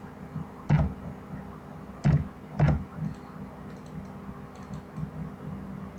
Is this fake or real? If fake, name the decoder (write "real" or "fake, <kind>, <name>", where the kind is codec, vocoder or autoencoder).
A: real